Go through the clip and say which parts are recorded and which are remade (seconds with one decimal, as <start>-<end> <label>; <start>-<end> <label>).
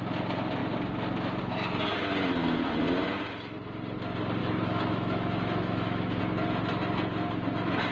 0.0-4.4 recorded; 4.4-6.2 remade; 6.2-7.9 recorded